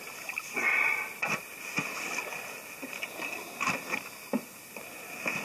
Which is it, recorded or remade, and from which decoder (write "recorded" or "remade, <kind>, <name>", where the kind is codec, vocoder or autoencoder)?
recorded